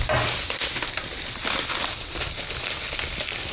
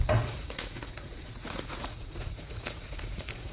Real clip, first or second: first